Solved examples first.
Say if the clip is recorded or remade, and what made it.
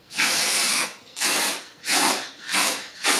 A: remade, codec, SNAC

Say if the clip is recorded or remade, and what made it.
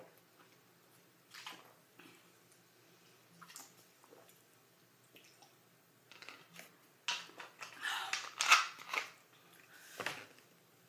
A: recorded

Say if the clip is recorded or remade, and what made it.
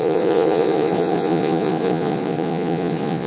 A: remade, vocoder, Vocos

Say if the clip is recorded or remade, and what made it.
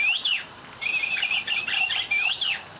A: remade, vocoder, BigVGAN v2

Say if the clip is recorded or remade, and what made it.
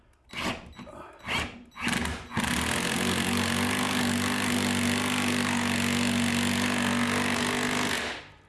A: recorded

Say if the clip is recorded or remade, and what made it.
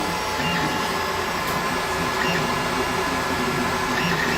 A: recorded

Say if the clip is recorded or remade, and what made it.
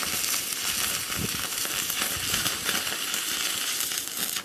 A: remade, vocoder, BigVGAN v2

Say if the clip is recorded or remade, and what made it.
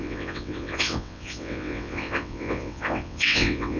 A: remade, vocoder, WaveNeXt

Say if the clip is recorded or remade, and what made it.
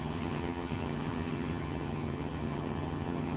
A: remade, vocoder, HiFi-GAN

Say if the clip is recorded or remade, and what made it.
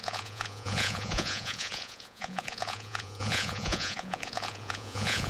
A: remade, vocoder, Vocos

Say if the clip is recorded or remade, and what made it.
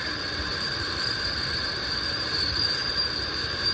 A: remade, vocoder, BigVGAN v2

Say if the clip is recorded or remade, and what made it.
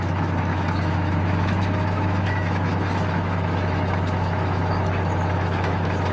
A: remade, autoencoder, DAC-VAE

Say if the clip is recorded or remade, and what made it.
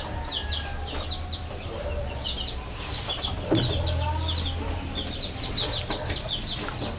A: recorded